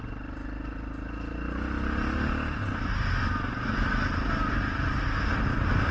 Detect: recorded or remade recorded